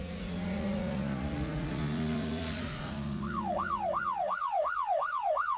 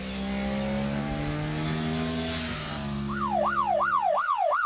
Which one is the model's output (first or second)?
first